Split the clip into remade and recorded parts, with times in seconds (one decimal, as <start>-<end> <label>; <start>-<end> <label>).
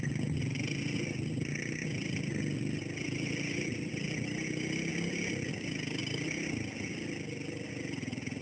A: 0.0-8.4 recorded